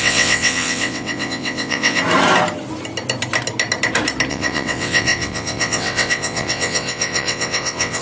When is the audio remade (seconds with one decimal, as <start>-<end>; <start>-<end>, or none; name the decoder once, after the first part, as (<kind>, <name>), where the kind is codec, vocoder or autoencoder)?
0.0-2.0 (vocoder, WaveNeXt); 4.3-8.0